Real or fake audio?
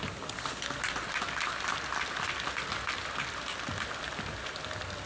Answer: real